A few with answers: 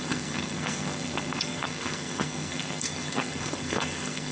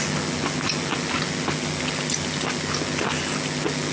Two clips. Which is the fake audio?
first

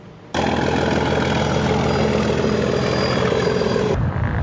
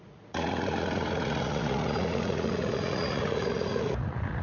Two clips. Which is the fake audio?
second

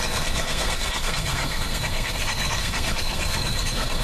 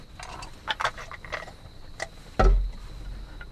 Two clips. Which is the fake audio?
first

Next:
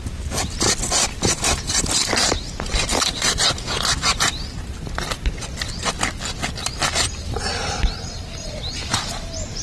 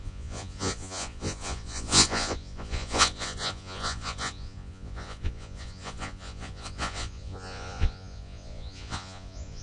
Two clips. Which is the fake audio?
second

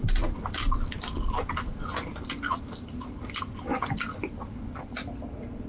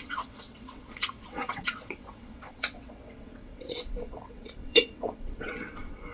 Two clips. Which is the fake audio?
second